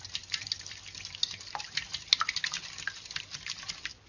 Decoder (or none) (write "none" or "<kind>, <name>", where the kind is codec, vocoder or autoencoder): none